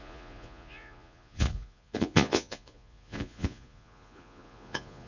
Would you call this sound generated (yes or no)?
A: yes